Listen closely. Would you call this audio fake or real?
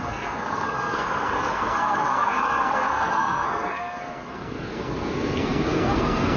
fake